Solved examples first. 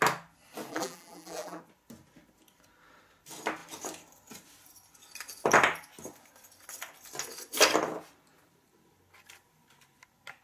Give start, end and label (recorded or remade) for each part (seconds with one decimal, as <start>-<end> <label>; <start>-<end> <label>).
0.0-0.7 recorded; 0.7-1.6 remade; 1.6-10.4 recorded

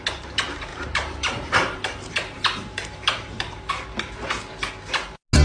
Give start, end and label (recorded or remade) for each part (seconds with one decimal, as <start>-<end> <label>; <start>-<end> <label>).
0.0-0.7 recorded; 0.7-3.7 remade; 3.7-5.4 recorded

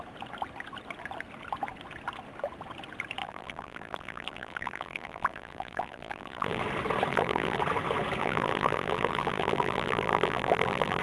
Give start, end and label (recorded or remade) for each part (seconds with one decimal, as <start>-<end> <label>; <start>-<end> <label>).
0.0-3.2 recorded; 3.2-6.6 remade; 6.6-7.1 recorded; 7.1-7.6 remade; 7.6-8.2 recorded; 8.2-11.0 remade

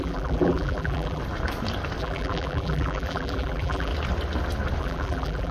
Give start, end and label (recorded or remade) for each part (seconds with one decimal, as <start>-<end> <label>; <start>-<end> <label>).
0.0-1.2 remade; 1.2-2.0 recorded; 2.0-3.9 remade; 3.9-4.8 recorded; 4.8-5.5 remade

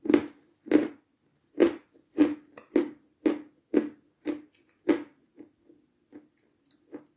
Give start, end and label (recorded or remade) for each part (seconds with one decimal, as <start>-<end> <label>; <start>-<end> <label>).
0.0-7.2 recorded